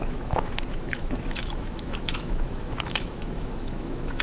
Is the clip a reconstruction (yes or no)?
yes